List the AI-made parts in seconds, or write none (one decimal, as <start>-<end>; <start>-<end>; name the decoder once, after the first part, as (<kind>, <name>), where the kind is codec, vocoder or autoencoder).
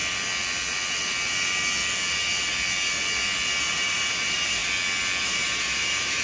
3.6-4.6 (vocoder, BigVGAN v2); 5.2-6.2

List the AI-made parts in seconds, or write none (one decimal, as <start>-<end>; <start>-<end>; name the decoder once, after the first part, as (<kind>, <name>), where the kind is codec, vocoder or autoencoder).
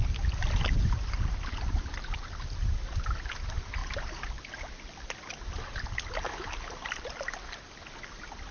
none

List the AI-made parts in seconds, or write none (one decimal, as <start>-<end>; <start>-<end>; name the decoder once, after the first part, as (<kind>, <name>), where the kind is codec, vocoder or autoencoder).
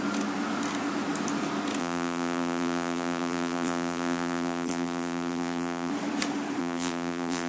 1.8-5.9 (vocoder, BigVGAN v2); 6.6-7.5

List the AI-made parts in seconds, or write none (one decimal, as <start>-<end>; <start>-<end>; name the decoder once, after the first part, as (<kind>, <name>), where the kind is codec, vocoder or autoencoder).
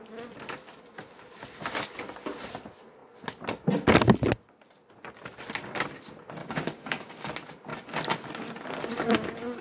6.4-7.3 (codec, DAC)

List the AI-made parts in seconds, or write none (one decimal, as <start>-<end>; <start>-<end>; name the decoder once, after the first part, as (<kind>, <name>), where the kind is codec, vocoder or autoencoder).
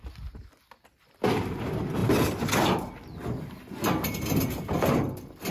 none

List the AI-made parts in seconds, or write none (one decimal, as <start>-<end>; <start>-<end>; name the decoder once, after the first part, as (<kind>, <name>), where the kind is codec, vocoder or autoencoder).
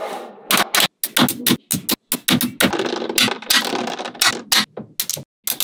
none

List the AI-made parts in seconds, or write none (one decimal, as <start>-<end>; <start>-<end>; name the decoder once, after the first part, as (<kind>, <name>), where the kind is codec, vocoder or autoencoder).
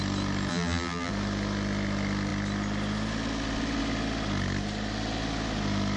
0.5-1.1 (vocoder, BigVGAN v2)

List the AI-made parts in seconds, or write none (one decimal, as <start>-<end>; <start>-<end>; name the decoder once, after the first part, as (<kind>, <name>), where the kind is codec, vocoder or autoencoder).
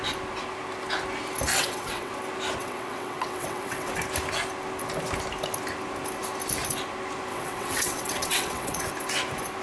1.5-2.1 (vocoder, WaveNeXt); 2.6-3.9; 7.3-8.9